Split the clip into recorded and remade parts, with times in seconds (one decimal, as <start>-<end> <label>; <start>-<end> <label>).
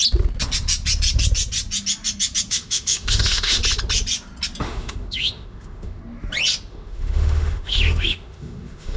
0.0-2.5 recorded; 2.5-3.6 remade; 3.6-4.6 recorded; 4.6-6.0 remade; 6.0-6.7 recorded; 6.7-9.0 remade